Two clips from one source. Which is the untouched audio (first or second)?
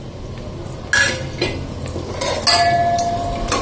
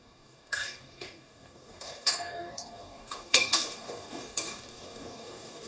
first